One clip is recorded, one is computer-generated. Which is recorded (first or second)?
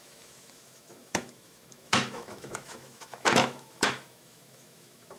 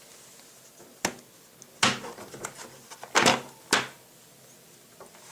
second